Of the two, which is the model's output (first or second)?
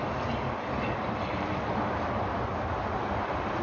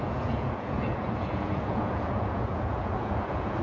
second